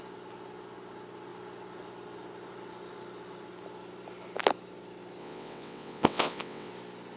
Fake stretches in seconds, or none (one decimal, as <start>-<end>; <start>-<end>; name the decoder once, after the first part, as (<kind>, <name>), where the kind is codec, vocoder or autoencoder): 5.2-6.7 (vocoder, WaveNeXt)